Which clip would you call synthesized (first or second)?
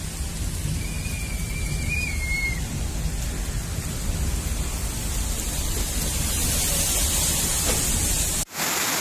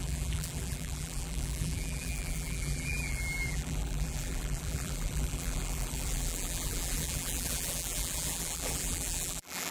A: second